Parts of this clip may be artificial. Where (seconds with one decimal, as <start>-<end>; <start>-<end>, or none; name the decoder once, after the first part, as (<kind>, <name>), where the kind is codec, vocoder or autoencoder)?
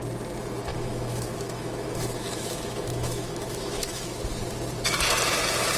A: 0.7-4.2 (autoencoder, DAC-VAE)